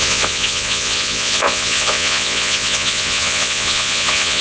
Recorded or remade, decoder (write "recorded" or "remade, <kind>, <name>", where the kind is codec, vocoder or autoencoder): remade, vocoder, Vocos